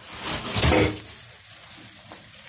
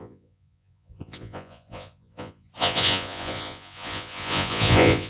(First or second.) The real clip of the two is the first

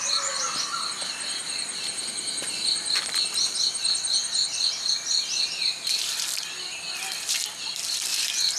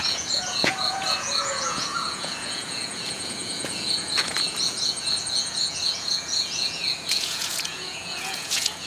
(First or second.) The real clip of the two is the first